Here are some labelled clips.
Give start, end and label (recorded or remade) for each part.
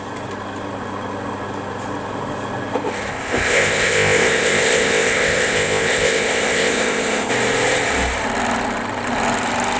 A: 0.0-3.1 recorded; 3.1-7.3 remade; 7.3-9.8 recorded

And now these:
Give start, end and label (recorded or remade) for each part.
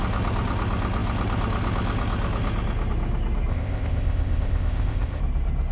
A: 0.0-3.5 recorded; 3.5-5.2 remade; 5.2-5.7 recorded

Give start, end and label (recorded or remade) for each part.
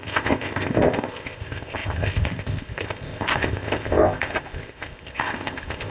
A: 0.0-5.9 remade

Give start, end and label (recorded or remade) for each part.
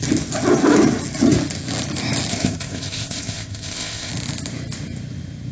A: 0.0-2.3 recorded; 2.3-4.1 remade; 4.1-5.5 recorded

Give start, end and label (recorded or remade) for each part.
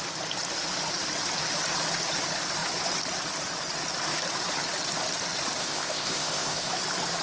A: 0.0-5.6 recorded; 5.6-6.7 remade; 6.7-7.2 recorded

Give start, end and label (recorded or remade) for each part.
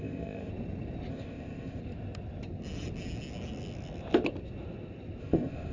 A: 0.0-0.5 remade; 0.5-1.1 recorded; 1.1-1.8 remade; 1.8-5.2 recorded; 5.2-5.7 remade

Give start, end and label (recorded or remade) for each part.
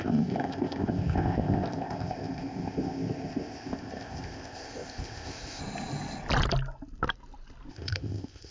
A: 0.0-5.6 remade; 5.6-7.7 recorded; 7.7-8.5 remade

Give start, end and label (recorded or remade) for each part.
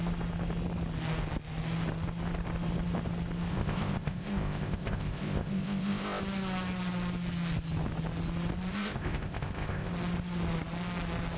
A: 0.0-3.5 recorded; 3.5-6.2 remade; 6.2-8.7 recorded; 8.7-9.9 remade; 9.9-11.4 recorded